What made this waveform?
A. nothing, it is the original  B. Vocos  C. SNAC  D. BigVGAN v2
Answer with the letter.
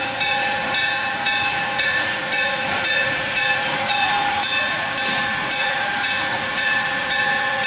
B